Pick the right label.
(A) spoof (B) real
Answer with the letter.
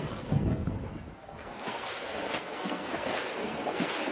A